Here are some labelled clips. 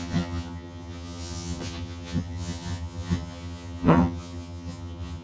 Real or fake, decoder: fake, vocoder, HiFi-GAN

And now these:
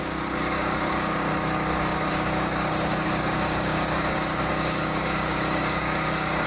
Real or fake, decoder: fake, codec, DAC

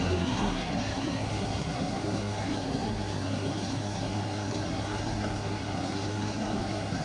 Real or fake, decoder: fake, codec, SNAC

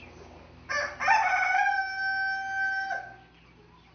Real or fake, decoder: real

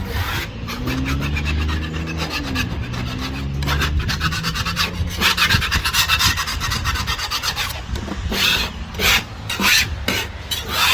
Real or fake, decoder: real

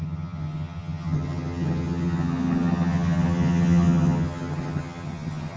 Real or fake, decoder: fake, vocoder, HiFi-GAN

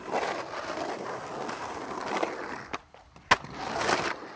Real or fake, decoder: real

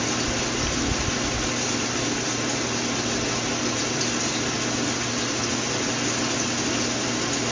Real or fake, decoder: real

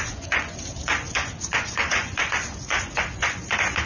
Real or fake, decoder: fake, vocoder, Vocos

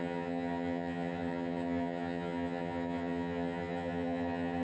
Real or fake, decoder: fake, vocoder, HiFi-GAN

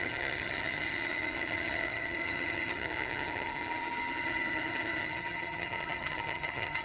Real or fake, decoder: fake, vocoder, HiFi-GAN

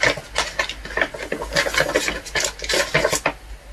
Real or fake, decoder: real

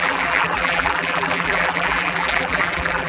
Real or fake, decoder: fake, vocoder, BigVGAN v2